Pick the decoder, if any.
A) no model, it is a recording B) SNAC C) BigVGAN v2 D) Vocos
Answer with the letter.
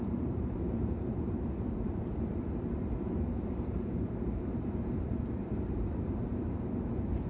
C